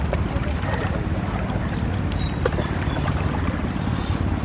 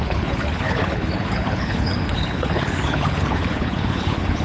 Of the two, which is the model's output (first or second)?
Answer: second